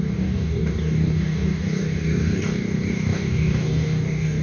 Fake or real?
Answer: fake